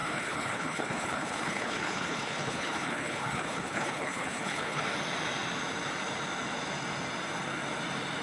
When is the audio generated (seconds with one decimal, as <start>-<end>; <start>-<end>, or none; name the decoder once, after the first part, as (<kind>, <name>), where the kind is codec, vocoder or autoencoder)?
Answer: 0.0-4.8 (codec, HILCodec)